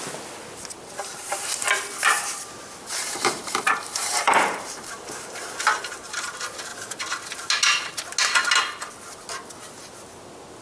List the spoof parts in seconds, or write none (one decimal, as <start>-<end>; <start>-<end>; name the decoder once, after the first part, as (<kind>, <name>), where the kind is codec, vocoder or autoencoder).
2.9-6.3 (vocoder, BigVGAN v2)